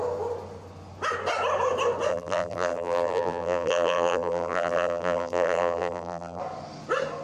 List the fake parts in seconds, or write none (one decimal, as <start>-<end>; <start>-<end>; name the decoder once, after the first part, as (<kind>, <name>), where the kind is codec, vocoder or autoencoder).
2.1-6.4 (vocoder, BigVGAN v2)